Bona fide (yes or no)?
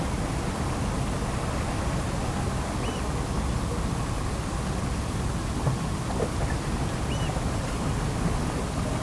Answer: yes